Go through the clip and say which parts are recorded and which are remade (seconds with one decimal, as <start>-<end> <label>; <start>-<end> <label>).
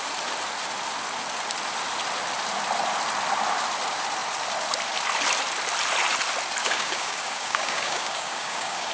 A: 0.0-6.6 recorded; 6.6-8.9 remade